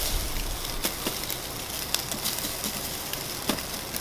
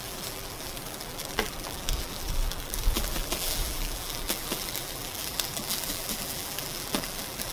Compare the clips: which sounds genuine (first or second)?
first